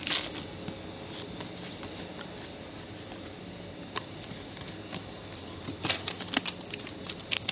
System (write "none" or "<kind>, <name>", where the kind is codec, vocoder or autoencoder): none